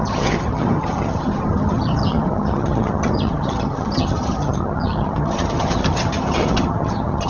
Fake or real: fake